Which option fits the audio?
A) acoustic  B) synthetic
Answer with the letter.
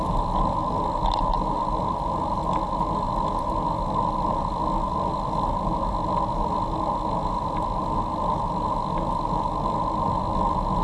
A